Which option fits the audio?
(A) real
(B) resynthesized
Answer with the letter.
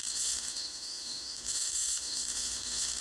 B